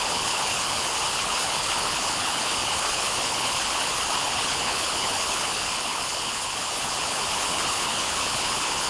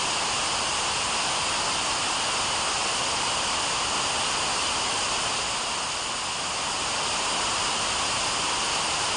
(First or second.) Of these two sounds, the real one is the second